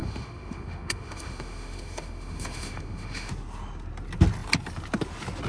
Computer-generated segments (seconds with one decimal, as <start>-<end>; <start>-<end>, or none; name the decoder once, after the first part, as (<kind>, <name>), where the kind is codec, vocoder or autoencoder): 0.0-3.3 (autoencoder, DAC-VAE)